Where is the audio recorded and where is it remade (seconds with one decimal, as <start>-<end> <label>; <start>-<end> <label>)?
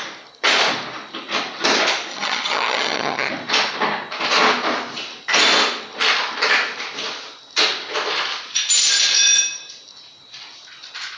0.0-2.1 recorded; 2.1-3.3 remade; 3.3-11.2 recorded